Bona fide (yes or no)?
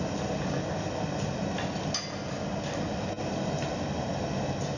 yes